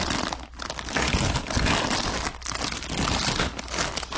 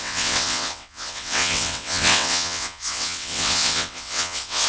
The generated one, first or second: second